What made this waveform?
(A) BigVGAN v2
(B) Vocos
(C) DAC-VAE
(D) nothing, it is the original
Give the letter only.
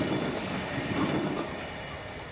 D